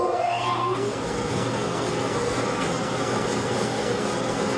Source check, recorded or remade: remade